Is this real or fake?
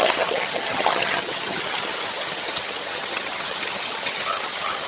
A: fake